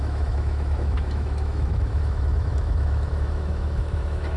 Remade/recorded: remade